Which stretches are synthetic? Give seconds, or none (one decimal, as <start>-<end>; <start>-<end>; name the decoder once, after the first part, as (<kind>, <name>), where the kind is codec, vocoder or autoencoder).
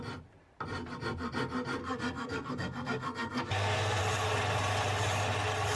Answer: 1.8-4.0 (codec, SNAC)